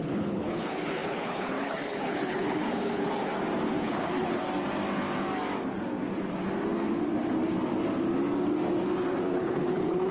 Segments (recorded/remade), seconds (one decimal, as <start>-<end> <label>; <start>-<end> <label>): 0.0-3.3 remade; 3.3-3.8 recorded; 3.8-4.4 remade; 4.4-9.3 recorded; 9.3-10.1 remade